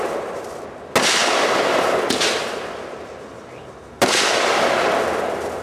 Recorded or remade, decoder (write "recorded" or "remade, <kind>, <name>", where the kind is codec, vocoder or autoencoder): recorded